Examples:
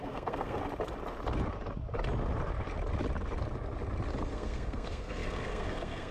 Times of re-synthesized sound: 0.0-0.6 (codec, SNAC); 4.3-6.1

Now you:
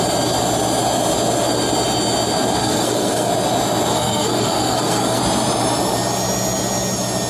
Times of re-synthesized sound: 2.6-3.3 (codec, SNAC); 3.9-5.2

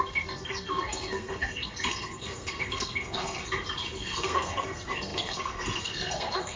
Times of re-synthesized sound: 0.0-3.4 (codec, SNAC); 4.0-6.6

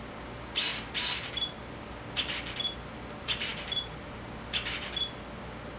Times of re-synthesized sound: none

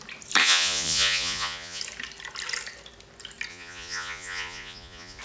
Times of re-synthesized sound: 0.4-1.8 (vocoder, Vocos); 3.5-5.2

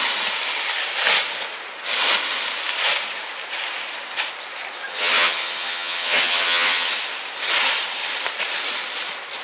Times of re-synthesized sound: 4.9-6.9 (vocoder, HiFi-GAN)